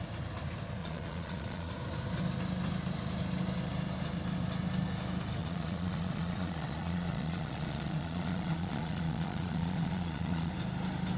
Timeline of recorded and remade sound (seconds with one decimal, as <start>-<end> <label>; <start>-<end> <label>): 0.0-0.8 recorded; 0.8-1.7 remade; 1.7-5.4 recorded; 5.4-10.5 remade; 10.5-11.2 recorded